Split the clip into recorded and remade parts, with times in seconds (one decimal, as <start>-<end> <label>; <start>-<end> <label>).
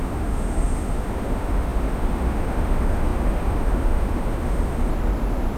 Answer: 0.0-4.9 remade; 4.9-5.6 recorded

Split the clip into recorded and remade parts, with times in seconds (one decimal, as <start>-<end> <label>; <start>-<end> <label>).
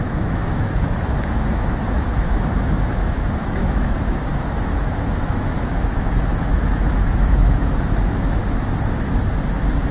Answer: 0.0-8.4 remade; 8.4-9.9 recorded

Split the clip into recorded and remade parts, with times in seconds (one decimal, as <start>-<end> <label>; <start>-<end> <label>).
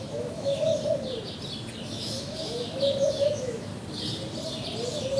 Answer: 0.0-0.7 remade; 0.7-1.9 recorded; 1.9-3.7 remade; 3.7-5.2 recorded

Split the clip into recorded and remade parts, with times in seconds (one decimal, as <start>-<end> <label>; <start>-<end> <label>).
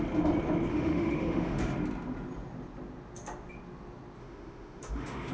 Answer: 0.0-0.7 recorded; 0.7-1.6 remade; 1.6-4.2 recorded; 4.2-5.3 remade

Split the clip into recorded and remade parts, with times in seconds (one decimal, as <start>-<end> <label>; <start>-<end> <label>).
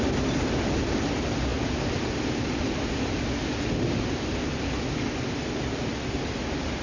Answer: 0.0-6.8 recorded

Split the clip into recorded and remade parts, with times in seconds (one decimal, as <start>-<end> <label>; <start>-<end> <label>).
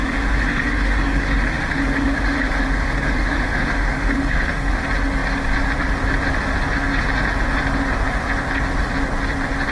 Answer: 0.0-4.8 remade; 4.8-9.7 recorded